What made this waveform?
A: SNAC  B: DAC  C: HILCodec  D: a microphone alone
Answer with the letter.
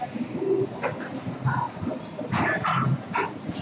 D